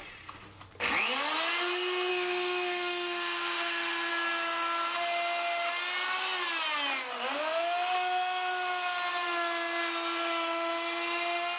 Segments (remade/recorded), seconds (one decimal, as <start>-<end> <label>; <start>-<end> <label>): 0.0-2.1 recorded; 2.1-4.1 remade; 4.1-11.6 recorded